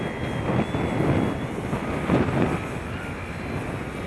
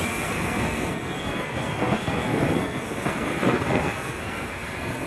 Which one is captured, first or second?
first